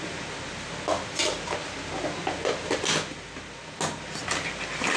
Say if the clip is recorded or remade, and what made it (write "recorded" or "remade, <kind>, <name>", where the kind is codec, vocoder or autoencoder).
recorded